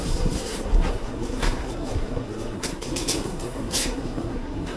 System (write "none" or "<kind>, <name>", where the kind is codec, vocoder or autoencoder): codec, SNAC